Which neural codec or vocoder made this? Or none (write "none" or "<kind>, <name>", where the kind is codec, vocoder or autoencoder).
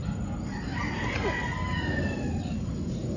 none